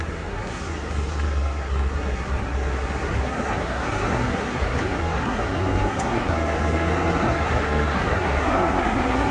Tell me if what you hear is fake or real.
fake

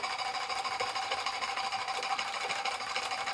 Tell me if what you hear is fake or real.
real